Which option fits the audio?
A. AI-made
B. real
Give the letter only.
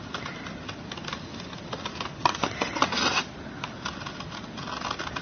B